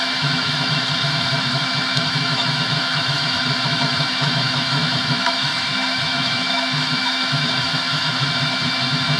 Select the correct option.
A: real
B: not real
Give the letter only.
B